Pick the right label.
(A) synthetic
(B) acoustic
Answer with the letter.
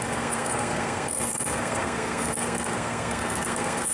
A